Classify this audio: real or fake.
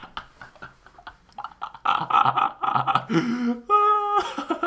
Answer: real